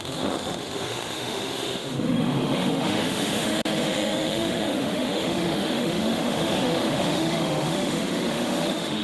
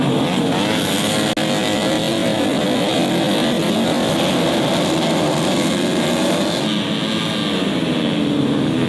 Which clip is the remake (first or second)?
first